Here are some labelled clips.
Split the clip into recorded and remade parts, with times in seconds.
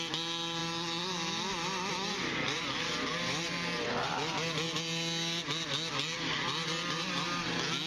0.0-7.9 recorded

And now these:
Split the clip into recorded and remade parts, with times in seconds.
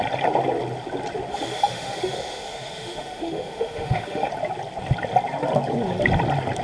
0.0-1.3 recorded; 1.3-4.3 remade; 4.3-6.6 recorded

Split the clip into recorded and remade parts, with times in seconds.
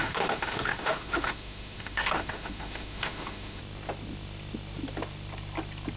0.0-3.6 remade; 3.6-6.0 recorded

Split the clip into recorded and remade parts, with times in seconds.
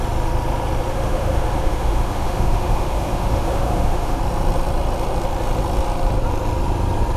0.0-0.9 recorded; 0.9-4.2 remade; 4.2-7.2 recorded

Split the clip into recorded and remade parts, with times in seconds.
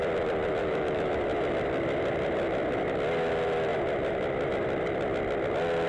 0.0-0.6 recorded; 0.6-1.1 remade; 1.1-5.9 recorded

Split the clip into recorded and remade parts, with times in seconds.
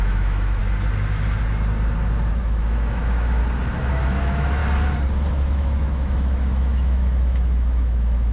0.0-0.6 remade; 0.6-2.4 recorded; 2.4-3.4 remade; 3.4-3.9 recorded; 3.9-4.6 remade; 4.6-5.3 recorded; 5.3-8.3 remade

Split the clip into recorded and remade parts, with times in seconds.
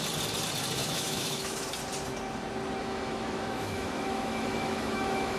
0.0-0.8 recorded; 0.8-1.7 remade; 1.7-2.8 recorded; 2.8-5.4 remade